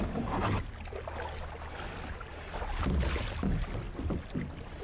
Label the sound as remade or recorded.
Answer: recorded